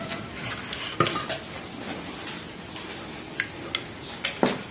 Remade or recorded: recorded